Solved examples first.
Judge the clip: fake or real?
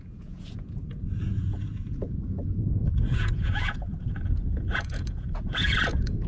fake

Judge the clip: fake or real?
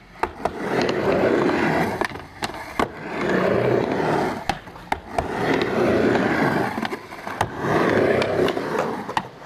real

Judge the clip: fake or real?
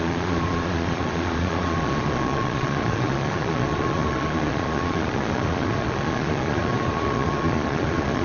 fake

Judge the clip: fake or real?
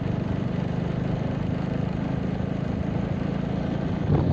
real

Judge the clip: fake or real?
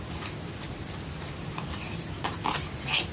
real